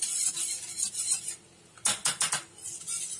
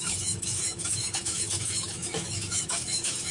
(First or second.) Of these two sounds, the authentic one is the first